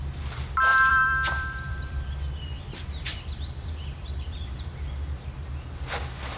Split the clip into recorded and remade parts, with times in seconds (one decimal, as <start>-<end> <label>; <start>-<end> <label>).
0.0-0.7 recorded; 0.7-4.5 remade; 4.5-6.4 recorded